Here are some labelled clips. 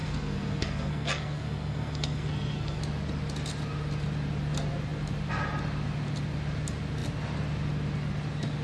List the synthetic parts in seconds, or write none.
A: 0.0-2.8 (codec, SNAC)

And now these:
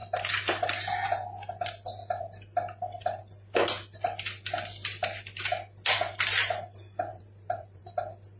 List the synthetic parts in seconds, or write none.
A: 7.1-7.8 (vocoder, BigVGAN v2)

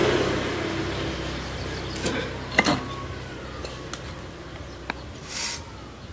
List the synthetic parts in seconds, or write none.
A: none

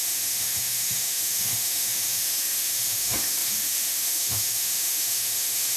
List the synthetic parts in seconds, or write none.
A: 0.0-5.8 (autoencoder, DAC-VAE)